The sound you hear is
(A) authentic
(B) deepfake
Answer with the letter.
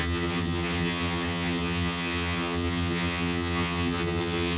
B